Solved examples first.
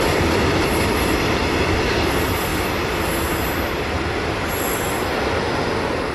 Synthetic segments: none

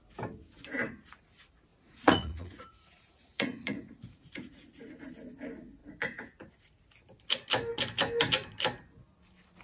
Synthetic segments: 1.7-4.9 (vocoder, Vocos); 5.8-6.5

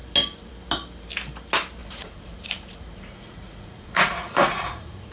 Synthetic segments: 1.8-5.1 (vocoder, Vocos)

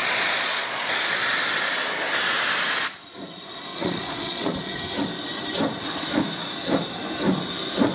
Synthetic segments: 0.0-0.9 (vocoder, Vocos); 3.7-4.8

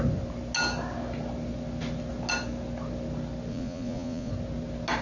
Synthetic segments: 3.5-4.3 (vocoder, Vocos)

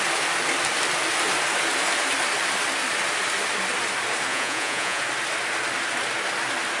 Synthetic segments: 4.3-5.0 (vocoder, Vocos)